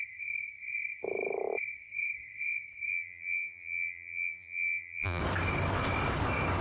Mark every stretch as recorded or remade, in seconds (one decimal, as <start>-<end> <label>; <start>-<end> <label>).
0.0-2.9 recorded; 2.9-5.2 remade; 5.2-6.6 recorded